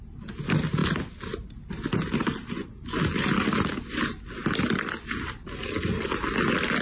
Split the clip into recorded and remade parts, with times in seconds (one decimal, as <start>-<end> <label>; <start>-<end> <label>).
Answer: 0.0-6.8 recorded